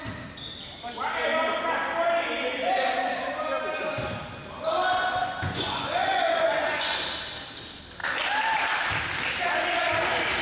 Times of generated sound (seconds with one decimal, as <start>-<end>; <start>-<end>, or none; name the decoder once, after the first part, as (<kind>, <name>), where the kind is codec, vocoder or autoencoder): 5.2-7.0 (vocoder, Vocos)